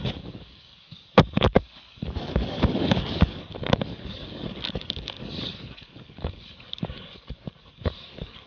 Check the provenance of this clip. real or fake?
fake